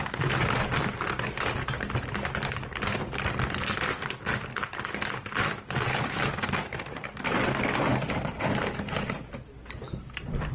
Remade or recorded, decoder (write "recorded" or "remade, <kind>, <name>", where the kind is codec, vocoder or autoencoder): remade, vocoder, BigVGAN v2